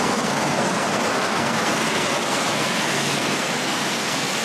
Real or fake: fake